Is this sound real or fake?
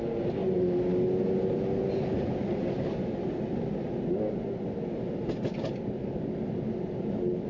real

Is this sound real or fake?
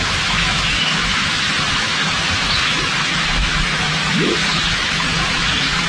fake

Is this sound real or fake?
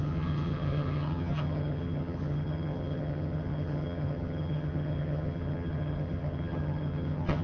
fake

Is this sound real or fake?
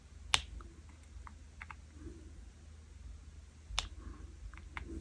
real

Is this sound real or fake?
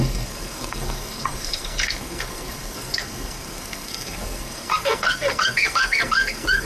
fake